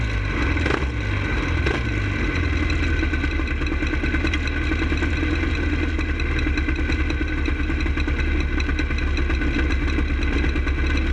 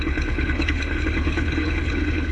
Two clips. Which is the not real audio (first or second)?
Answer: second